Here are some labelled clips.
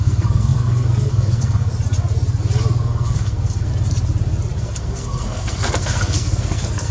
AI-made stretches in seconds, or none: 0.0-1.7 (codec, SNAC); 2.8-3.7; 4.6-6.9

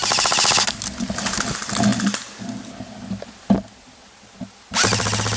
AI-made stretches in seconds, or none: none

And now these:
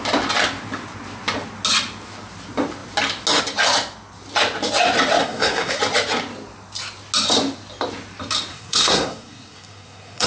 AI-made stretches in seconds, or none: 5.2-5.8 (codec, SNAC); 8.5-10.3

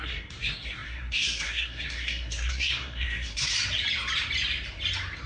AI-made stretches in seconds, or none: 0.0-3.5 (codec, SNAC)

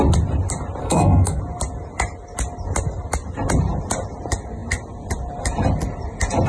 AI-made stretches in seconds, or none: 0.8-1.4 (codec, SNAC)